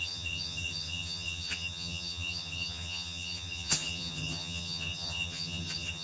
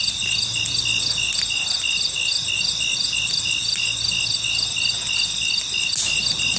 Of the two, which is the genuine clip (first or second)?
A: second